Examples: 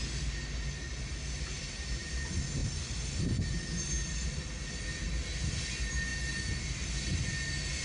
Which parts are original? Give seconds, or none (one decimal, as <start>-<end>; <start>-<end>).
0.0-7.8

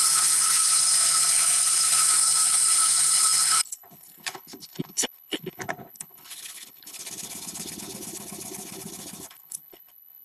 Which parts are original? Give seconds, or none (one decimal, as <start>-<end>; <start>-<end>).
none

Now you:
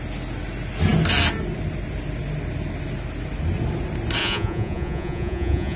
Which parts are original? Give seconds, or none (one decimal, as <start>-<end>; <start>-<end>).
0.0-4.2

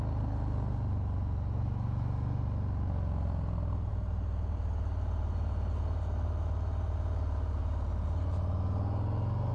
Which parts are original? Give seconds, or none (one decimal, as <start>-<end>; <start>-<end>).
0.0-9.5

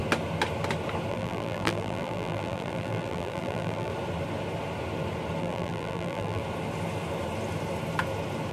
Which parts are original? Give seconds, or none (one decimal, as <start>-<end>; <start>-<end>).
0.0-1.1; 3.9-5.4; 6.4-8.5